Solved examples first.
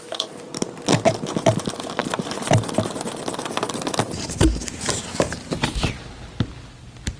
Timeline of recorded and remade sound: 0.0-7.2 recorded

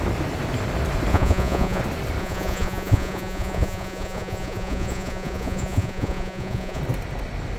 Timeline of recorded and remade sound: 0.0-1.1 recorded; 1.1-1.8 remade; 1.8-2.2 recorded; 2.2-6.8 remade; 6.8-7.6 recorded

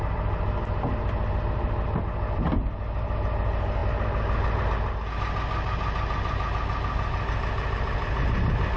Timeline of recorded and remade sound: 0.0-8.8 recorded